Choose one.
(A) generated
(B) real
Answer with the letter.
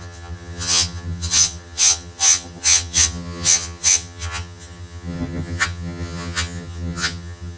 A